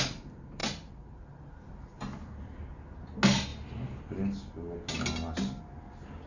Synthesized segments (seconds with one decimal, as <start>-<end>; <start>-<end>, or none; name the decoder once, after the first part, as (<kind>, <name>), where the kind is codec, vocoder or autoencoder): 0.6-1.7 (vocoder, BigVGAN v2)